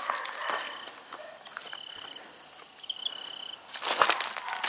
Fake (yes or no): no